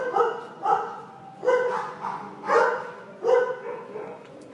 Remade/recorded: remade